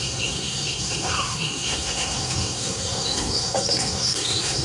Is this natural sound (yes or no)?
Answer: no